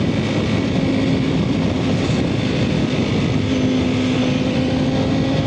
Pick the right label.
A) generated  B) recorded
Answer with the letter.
B